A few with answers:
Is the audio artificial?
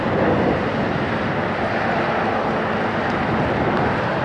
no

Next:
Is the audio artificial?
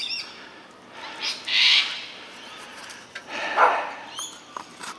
no